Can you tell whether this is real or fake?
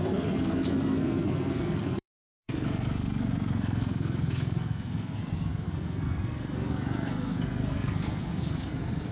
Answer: fake